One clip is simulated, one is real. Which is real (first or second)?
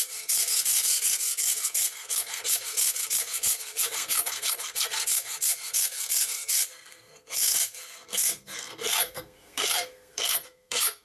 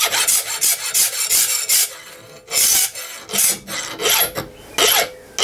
second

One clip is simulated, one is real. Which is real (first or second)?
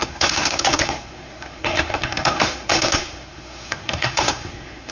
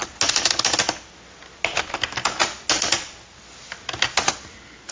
second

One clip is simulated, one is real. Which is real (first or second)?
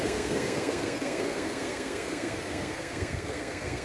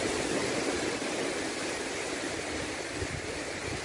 second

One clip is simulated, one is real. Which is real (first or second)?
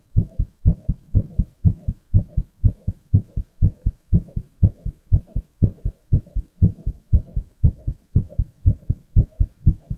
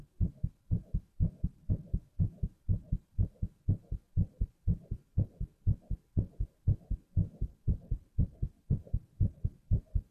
second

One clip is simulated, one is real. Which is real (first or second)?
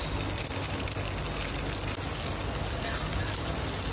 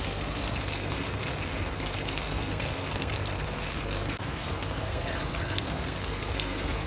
first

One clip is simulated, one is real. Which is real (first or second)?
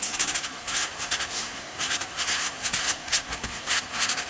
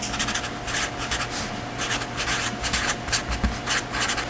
second